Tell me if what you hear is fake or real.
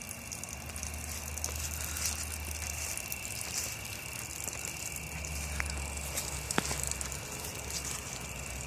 real